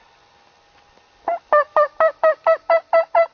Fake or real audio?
real